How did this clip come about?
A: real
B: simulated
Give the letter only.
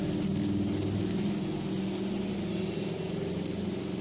A